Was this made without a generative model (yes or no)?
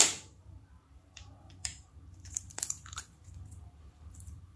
no